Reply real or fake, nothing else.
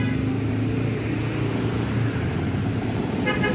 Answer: real